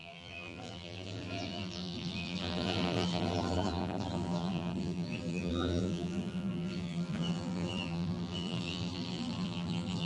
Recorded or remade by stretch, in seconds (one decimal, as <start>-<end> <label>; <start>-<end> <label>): 0.0-10.1 remade